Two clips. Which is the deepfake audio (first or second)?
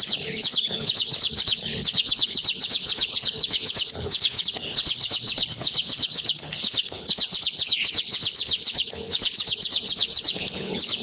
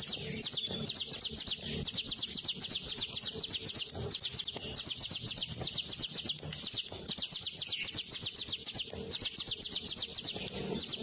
first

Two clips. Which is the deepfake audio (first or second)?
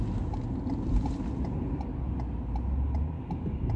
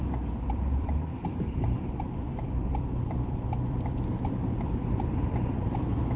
second